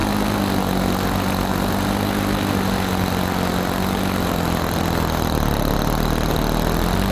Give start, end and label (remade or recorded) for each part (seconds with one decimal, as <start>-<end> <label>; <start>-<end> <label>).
0.0-7.1 recorded